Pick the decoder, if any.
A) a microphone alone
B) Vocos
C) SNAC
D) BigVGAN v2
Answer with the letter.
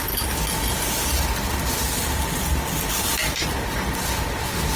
A